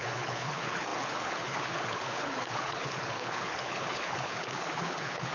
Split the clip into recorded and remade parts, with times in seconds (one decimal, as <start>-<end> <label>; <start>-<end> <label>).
0.0-5.3 remade